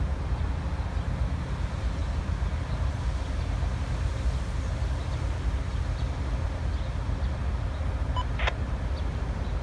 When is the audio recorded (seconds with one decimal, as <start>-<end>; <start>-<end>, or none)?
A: 0.0-9.6